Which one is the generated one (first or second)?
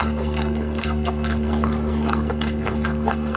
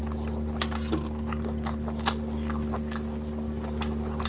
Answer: first